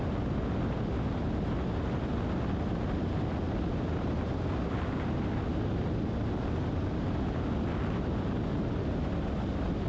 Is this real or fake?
real